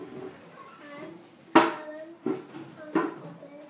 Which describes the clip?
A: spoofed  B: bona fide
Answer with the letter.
B